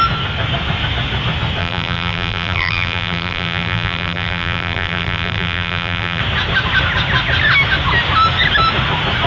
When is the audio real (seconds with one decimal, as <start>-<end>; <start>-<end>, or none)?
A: 0.0-1.6; 6.2-9.3